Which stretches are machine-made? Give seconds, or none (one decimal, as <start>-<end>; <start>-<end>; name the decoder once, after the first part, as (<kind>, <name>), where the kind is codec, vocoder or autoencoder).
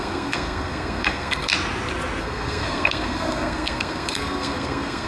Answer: 0.0-1.5 (codec, SNAC); 2.2-5.1